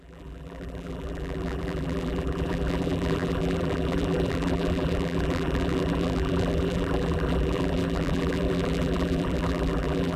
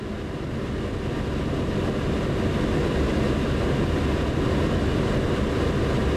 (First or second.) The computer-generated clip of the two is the first